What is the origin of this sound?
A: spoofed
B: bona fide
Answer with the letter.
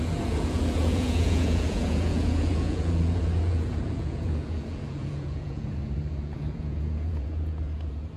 A